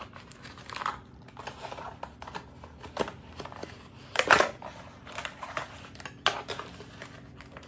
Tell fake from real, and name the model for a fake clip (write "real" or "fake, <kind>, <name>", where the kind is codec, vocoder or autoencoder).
real